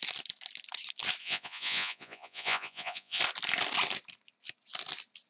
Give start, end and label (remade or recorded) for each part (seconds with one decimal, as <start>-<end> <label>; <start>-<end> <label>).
0.0-1.2 recorded; 1.2-3.2 remade; 3.2-5.3 recorded